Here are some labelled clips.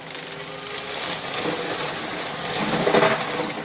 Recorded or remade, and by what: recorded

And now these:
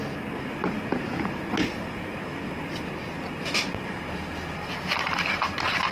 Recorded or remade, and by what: recorded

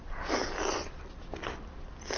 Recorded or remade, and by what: recorded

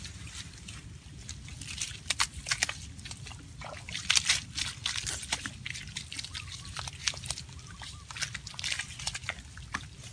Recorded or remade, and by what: recorded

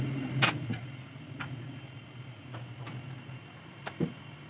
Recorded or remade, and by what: recorded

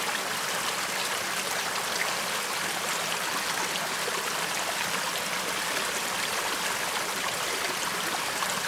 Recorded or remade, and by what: recorded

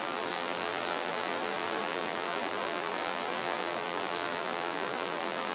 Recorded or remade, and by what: remade, vocoder, BigVGAN v2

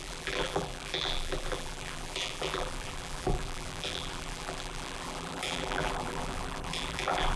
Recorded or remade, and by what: remade, vocoder, BigVGAN v2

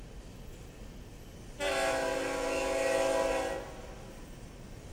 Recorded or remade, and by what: recorded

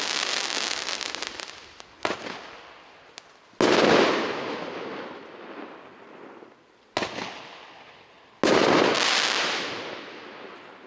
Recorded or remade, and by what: recorded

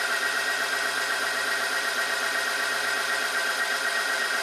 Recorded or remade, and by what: remade, vocoder, BigVGAN v2